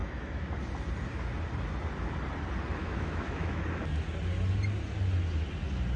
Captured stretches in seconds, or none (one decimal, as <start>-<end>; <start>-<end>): 0.5-2.8; 3.6-6.0